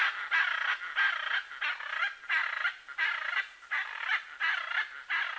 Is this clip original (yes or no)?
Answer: yes